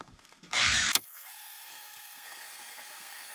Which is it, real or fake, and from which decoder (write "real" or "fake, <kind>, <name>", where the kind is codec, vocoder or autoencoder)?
fake, codec, SNAC